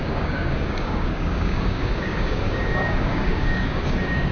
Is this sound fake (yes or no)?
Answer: yes